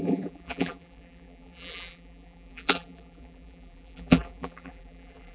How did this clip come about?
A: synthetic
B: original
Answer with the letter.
A